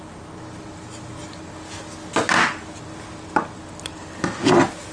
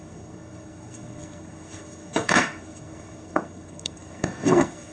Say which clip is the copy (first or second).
second